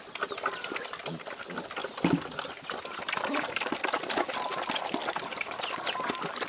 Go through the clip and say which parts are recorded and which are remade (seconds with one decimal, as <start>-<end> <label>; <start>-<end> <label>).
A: 0.0-5.0 recorded; 5.0-6.5 remade